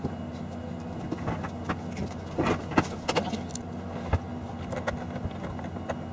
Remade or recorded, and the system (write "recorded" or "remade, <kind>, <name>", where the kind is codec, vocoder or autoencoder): recorded